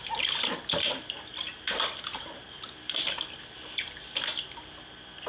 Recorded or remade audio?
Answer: recorded